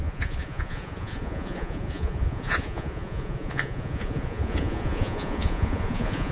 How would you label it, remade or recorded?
remade